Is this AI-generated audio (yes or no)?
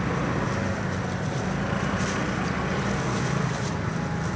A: no